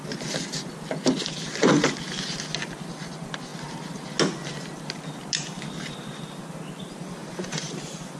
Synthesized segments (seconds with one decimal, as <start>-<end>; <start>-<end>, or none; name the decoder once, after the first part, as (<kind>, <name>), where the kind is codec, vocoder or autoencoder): 7.2-8.2 (vocoder, BigVGAN v2)